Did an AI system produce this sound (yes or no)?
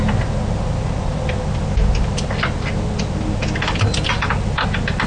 no